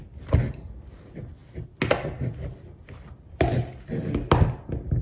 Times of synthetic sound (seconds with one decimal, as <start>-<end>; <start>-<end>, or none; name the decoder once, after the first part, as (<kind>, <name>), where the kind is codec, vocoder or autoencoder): none